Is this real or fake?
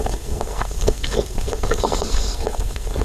fake